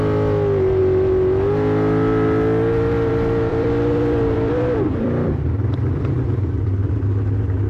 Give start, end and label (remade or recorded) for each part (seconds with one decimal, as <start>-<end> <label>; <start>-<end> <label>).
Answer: 0.0-3.5 recorded; 3.5-6.9 remade; 6.9-7.7 recorded